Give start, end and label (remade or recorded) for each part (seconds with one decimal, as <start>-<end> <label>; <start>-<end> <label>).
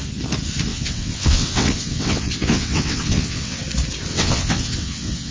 0.0-0.7 recorded; 0.7-3.6 remade; 3.6-4.1 recorded; 4.1-5.3 remade